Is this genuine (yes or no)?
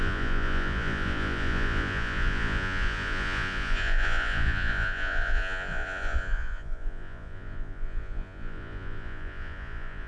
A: no